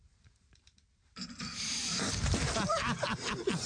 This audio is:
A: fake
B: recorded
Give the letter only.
A